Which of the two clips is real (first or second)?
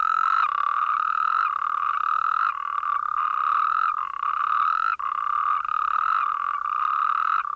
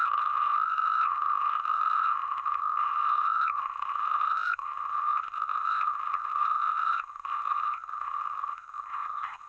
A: first